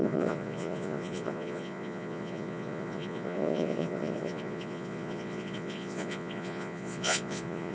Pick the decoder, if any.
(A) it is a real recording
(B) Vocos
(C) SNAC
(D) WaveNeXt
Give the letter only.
B